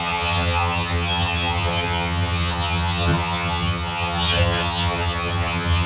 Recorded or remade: remade